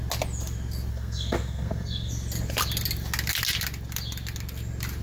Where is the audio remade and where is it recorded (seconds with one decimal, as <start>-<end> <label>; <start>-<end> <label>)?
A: 0.0-0.9 recorded; 0.9-2.1 remade; 2.1-5.0 recorded